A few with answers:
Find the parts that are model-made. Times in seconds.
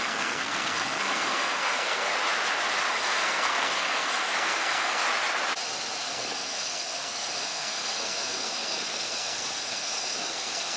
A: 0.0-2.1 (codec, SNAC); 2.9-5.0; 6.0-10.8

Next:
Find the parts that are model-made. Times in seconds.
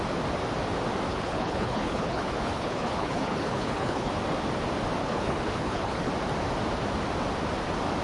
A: 1.1-4.1 (codec, HILCodec); 5.0-6.1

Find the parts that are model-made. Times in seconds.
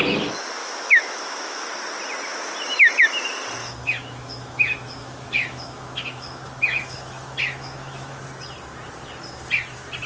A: 0.6-1.7 (autoencoder, DAC-VAE); 3.6-8.2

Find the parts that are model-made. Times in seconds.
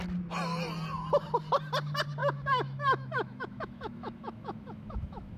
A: 2.2-5.4 (autoencoder, DAC-VAE)